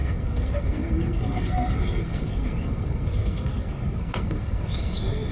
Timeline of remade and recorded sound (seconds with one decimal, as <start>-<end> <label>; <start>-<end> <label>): 0.0-5.3 remade

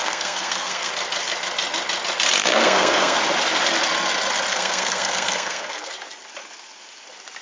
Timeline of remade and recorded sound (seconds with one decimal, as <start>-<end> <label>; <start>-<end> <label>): 0.0-0.9 remade; 0.9-2.4 recorded; 2.4-3.2 remade; 3.2-4.5 recorded; 4.5-5.9 remade; 5.9-7.4 recorded

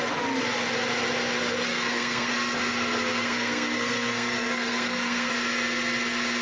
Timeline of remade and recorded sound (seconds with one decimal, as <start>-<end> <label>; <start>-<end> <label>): 0.0-1.7 recorded; 1.7-2.3 remade; 2.3-3.1 recorded; 3.1-5.3 remade; 5.3-6.4 recorded

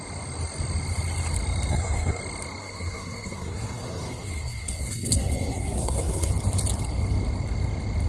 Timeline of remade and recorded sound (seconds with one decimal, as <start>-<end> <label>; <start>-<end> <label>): 0.0-1.7 recorded; 1.7-2.2 remade; 2.2-2.6 recorded; 2.6-6.3 remade; 6.3-8.1 recorded

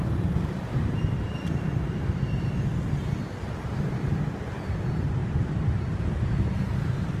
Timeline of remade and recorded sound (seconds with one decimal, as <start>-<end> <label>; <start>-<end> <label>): 0.0-7.2 recorded

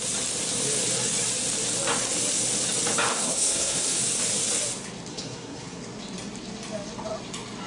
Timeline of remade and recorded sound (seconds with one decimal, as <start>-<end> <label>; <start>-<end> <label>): 0.0-3.1 recorded; 3.1-4.0 remade; 4.0-5.1 recorded; 5.1-5.8 remade; 5.8-7.7 recorded